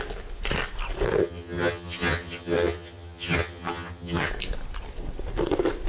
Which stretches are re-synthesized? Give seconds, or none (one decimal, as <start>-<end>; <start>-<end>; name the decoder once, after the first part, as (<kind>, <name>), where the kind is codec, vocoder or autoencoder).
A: 1.2-4.3 (vocoder, HiFi-GAN)